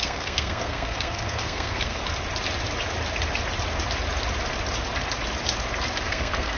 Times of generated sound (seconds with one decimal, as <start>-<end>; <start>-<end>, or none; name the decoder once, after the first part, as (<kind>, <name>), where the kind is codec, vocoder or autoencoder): 0.0-2.0 (codec, SNAC); 6.0-6.6